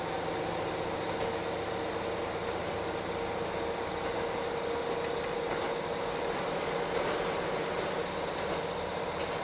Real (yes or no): yes